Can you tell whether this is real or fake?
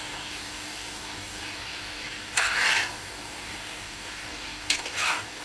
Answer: fake